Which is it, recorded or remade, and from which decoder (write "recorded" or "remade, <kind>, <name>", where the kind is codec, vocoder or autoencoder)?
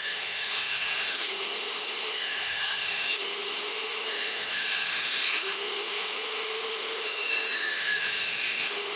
remade, autoencoder, DAC-VAE